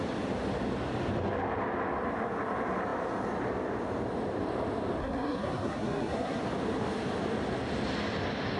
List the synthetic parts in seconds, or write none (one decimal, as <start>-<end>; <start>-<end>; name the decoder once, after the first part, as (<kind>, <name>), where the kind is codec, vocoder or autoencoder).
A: 5.0-6.4 (codec, SNAC)